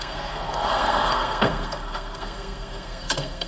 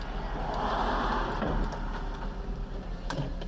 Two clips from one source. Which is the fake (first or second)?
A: first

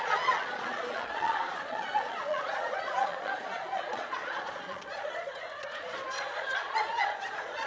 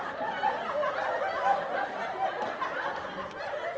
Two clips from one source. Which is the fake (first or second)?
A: first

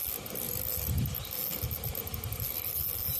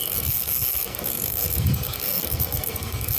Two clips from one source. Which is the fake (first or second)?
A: second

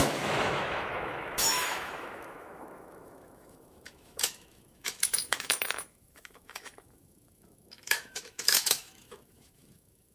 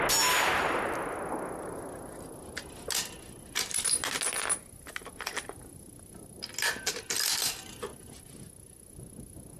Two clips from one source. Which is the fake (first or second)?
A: first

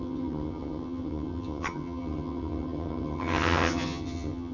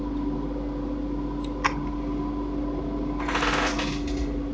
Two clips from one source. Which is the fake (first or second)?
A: first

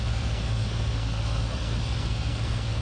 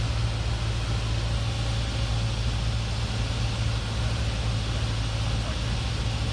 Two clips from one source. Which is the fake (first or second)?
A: first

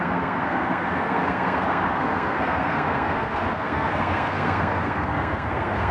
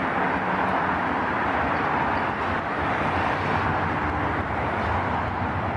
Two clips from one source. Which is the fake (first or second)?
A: first